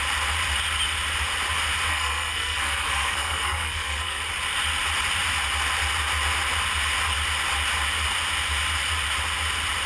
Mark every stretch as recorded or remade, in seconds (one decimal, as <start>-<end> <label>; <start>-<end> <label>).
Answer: 0.0-1.9 recorded; 1.9-4.2 remade; 4.2-9.9 recorded